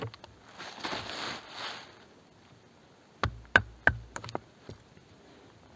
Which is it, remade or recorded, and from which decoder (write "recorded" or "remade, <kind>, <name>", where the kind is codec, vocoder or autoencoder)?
recorded